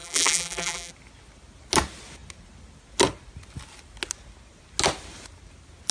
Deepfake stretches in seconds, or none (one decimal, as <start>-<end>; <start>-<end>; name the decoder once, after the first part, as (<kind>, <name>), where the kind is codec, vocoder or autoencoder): 0.0-0.9 (vocoder, BigVGAN v2)

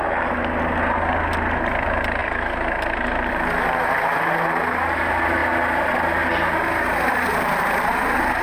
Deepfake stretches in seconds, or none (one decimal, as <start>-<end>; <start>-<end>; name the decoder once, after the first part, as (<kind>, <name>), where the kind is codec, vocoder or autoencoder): 7.3-7.9 (vocoder, BigVGAN v2)